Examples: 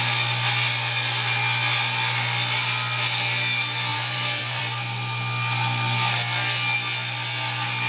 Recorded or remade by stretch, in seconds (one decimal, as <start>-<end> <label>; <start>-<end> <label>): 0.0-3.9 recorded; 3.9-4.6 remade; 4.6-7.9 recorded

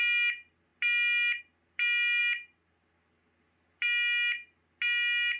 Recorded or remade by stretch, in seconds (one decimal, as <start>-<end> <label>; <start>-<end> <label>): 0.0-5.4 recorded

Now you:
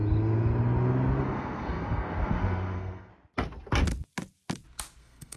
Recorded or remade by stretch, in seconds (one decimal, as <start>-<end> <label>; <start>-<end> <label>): 0.0-1.2 recorded; 1.2-3.1 remade; 3.1-5.0 recorded; 5.0-5.4 remade

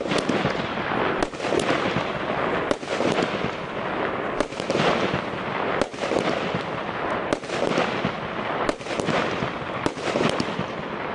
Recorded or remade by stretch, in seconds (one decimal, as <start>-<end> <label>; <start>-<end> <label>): 0.0-11.1 recorded

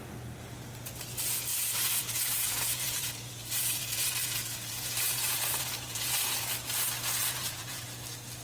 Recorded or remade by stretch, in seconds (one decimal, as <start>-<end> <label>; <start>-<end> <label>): 0.0-1.5 recorded; 1.5-6.5 remade; 6.5-7.2 recorded; 7.2-7.8 remade; 7.8-8.4 recorded